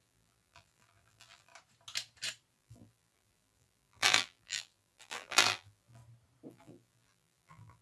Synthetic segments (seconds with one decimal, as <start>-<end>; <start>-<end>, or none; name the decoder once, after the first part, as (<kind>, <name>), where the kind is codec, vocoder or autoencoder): 0.0-1.5 (vocoder, BigVGAN v2); 2.5-6.0; 6.5-7.8